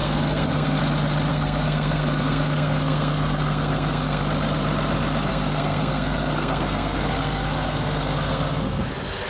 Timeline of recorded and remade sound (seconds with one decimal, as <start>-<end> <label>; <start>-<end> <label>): 0.0-0.8 remade; 0.8-1.3 recorded; 1.3-4.2 remade; 4.2-5.3 recorded; 5.3-8.9 remade; 8.9-9.3 recorded

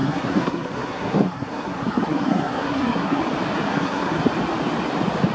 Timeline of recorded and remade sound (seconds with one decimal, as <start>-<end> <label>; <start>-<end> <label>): 0.0-3.2 remade; 3.2-3.7 recorded; 3.7-4.2 remade; 4.2-5.3 recorded

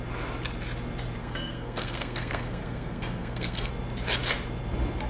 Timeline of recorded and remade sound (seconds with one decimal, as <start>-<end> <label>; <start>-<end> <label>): 0.0-1.2 recorded; 1.2-3.7 remade; 3.7-5.1 recorded

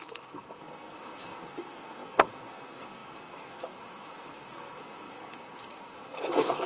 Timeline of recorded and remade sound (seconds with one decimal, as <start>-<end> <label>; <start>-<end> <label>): 0.0-6.7 remade

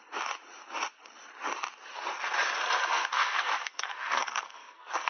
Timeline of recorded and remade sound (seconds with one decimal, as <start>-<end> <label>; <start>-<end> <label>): 0.0-2.8 recorded; 2.8-5.1 remade